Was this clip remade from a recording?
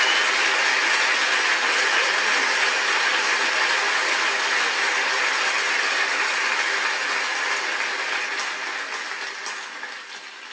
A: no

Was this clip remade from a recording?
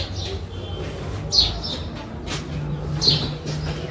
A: no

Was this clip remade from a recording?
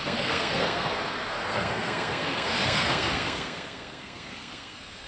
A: yes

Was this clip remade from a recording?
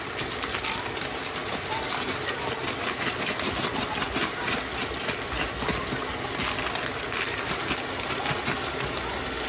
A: no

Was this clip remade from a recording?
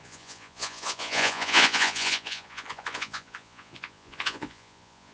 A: yes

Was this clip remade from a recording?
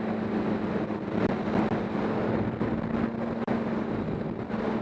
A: no